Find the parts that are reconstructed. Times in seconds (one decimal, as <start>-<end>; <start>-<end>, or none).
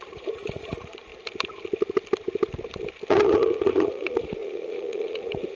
0.0-1.1; 3.1-5.6